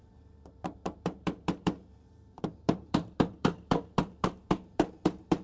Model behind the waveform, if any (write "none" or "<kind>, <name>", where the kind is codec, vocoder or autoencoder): vocoder, BigVGAN v2